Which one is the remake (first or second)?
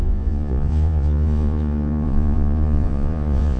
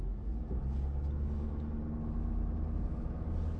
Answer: first